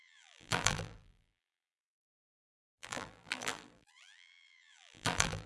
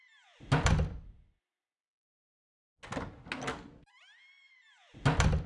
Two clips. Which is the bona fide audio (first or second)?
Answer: second